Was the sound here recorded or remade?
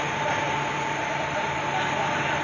recorded